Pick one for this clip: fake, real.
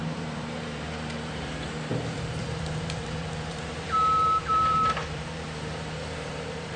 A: fake